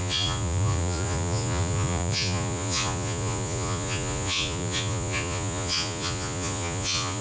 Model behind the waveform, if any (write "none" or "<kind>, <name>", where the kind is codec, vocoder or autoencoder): vocoder, Vocos